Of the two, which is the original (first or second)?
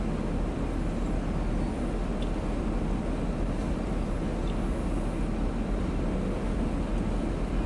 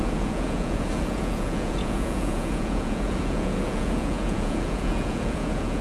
first